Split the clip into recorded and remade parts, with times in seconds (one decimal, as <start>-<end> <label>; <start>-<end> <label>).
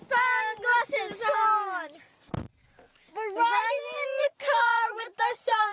0.0-2.6 recorded; 2.6-5.0 remade; 5.0-5.7 recorded